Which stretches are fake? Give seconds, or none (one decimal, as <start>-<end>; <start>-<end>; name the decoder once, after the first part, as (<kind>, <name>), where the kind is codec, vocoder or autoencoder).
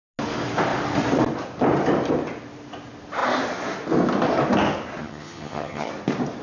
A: 5.0-5.9 (vocoder, HiFi-GAN)